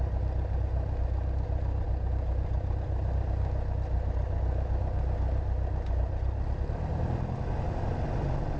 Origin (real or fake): real